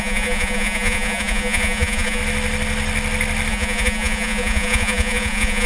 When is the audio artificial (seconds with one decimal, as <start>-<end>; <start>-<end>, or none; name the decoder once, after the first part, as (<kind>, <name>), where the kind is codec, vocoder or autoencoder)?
0.0-2.2 (vocoder, Vocos); 3.5-5.7